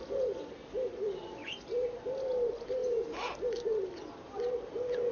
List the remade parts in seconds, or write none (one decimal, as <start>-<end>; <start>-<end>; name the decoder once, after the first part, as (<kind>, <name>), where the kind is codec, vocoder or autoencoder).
none

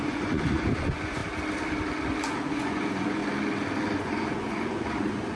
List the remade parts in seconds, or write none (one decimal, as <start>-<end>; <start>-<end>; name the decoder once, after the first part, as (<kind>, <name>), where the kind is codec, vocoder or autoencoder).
0.0-1.2 (vocoder, Vocos); 2.5-3.2; 4.0-5.4

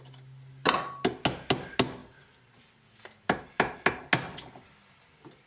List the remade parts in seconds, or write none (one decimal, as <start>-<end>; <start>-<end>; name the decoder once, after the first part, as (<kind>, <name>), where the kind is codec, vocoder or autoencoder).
none

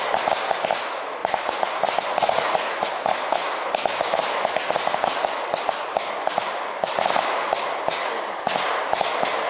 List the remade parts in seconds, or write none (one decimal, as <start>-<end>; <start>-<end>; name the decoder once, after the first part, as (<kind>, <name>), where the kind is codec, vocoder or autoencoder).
1.2-3.1 (vocoder, Vocos)